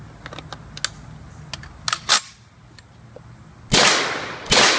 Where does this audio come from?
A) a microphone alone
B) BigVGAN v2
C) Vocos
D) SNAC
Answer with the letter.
A